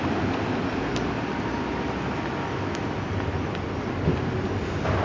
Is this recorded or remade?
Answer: recorded